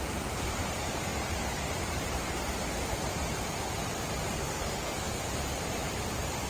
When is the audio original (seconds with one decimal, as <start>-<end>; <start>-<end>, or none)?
0.0-4.4; 5.2-6.5